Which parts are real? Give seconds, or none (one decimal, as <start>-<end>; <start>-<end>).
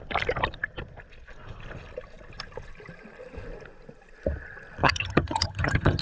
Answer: 0.0-4.8